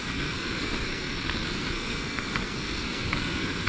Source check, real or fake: fake